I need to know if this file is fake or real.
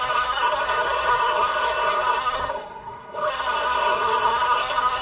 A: fake